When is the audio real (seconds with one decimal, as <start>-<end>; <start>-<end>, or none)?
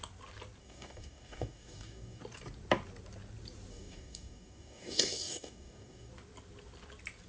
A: 0.0-0.6; 2.2-3.7; 6.1-7.3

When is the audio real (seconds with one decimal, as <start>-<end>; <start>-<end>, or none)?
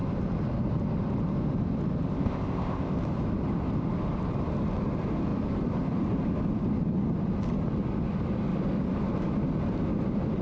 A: 0.0-2.1; 3.0-10.4